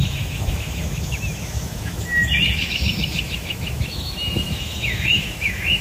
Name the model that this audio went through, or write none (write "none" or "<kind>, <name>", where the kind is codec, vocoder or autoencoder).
autoencoder, DAC-VAE